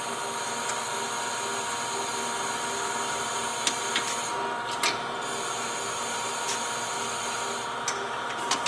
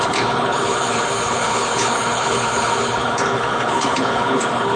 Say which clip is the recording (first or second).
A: first